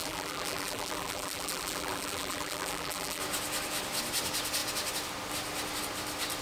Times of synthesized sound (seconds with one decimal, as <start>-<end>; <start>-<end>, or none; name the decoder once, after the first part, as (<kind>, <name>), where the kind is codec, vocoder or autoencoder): 0.0-3.2 (vocoder, BigVGAN v2)